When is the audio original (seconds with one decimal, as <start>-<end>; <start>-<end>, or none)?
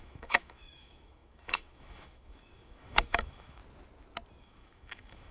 3.6-4.4